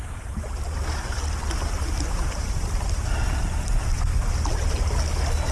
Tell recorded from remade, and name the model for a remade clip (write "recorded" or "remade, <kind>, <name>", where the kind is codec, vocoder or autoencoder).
recorded